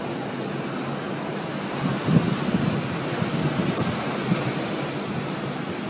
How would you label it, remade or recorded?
recorded